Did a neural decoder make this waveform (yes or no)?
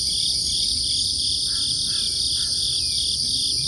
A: no